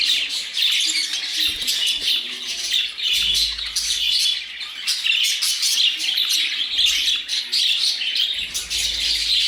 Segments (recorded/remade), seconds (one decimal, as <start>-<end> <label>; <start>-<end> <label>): 0.0-7.3 recorded; 7.3-7.9 remade; 7.9-9.5 recorded